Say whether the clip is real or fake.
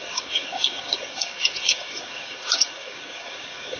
fake